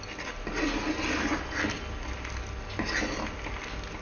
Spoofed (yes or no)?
no